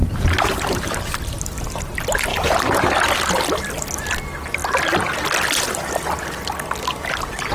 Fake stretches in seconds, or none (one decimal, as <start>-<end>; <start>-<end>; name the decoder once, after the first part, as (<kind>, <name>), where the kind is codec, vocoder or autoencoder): 0.0-1.0 (vocoder, BigVGAN v2); 2.3-2.9